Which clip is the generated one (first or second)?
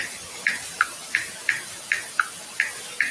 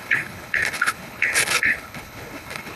second